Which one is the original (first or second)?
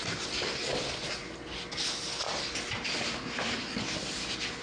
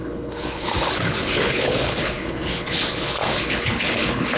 first